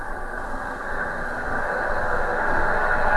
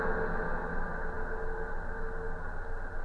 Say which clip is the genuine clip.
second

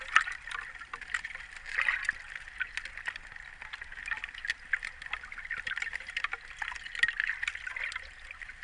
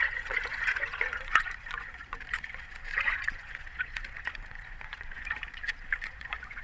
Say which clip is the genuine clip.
first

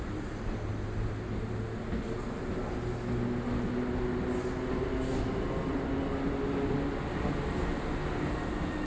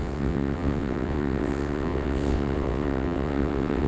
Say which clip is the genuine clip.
first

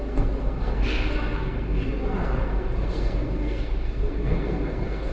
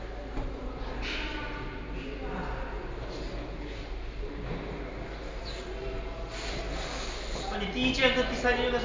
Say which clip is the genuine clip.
second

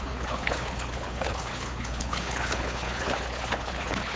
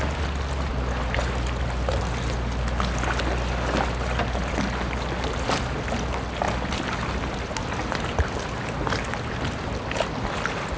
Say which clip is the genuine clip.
second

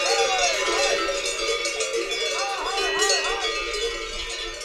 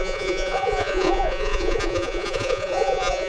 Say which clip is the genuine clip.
first